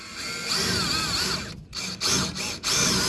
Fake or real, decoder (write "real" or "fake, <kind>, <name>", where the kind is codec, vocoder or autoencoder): real